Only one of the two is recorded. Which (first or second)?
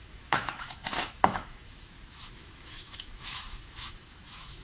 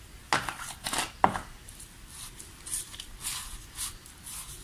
second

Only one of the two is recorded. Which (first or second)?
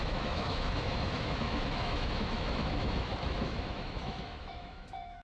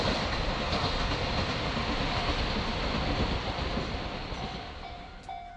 second